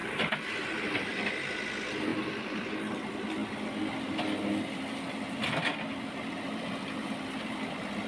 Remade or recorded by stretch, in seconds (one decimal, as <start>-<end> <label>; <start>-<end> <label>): 0.0-0.7 remade; 0.7-2.1 recorded; 2.1-2.9 remade; 2.9-8.1 recorded